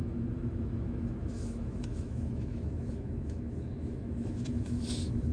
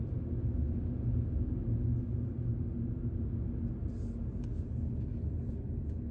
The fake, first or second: first